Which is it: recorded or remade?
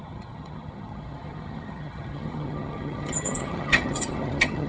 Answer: remade